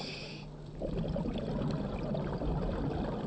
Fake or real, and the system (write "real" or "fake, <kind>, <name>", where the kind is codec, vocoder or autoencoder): real